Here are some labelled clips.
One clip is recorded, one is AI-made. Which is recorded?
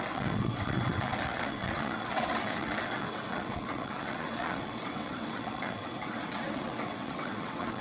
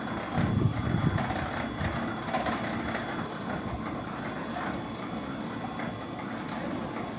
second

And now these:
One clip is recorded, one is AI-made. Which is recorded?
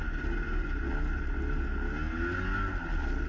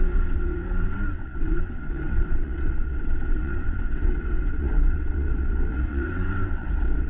first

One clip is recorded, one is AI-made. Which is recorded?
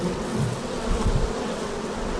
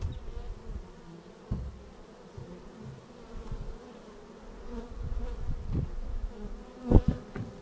second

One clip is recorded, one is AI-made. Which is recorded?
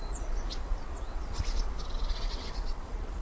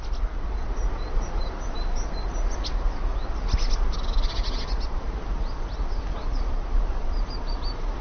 second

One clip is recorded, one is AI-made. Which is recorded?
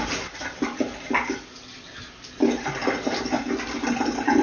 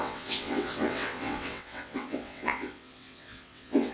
first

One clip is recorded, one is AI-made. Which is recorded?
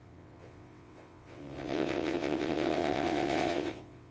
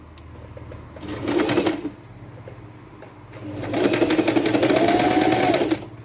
second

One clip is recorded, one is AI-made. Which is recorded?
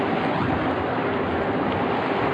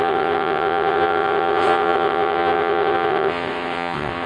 first